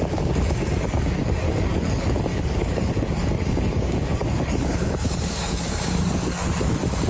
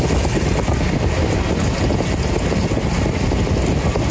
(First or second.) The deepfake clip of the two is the first